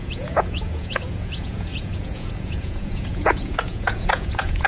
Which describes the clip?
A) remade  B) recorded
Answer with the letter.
A